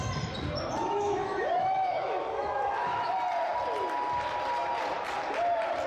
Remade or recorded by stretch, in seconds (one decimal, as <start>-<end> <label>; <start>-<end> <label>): 0.0-0.8 recorded; 0.8-3.1 remade; 3.1-5.9 recorded

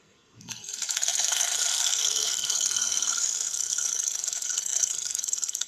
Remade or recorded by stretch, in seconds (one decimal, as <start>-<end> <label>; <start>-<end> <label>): 0.0-5.7 remade

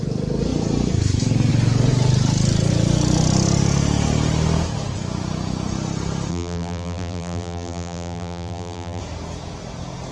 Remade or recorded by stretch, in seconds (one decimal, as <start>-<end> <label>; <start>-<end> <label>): 0.0-6.3 recorded; 6.3-9.0 remade; 9.0-10.1 recorded

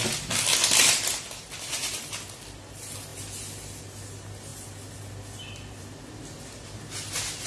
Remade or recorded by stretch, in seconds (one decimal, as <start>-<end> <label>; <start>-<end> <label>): 0.0-7.5 recorded

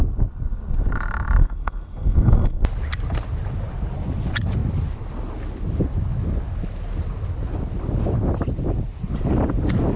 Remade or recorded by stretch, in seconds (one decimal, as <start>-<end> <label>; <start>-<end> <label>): 0.0-1.4 recorded; 1.4-2.6 remade; 2.6-10.0 recorded

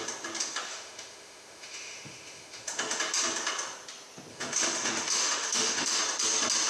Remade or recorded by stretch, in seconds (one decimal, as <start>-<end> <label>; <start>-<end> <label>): 0.0-0.7 recorded; 0.7-3.0 remade; 3.0-4.3 recorded; 4.3-6.0 remade; 6.0-6.7 recorded